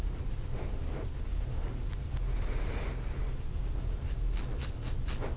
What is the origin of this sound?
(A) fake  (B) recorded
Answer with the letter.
B